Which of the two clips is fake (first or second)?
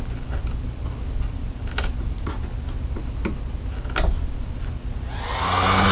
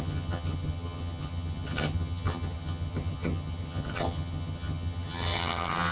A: second